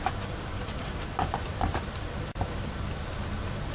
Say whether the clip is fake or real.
fake